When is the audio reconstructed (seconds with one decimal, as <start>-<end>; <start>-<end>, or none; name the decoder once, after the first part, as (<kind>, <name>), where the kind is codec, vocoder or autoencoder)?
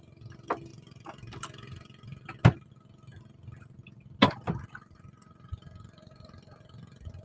none